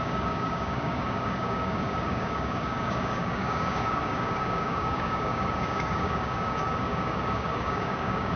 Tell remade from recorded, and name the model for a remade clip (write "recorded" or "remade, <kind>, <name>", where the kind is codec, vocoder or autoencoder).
remade, codec, DAC